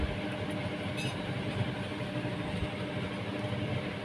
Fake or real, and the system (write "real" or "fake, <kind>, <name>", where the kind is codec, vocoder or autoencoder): real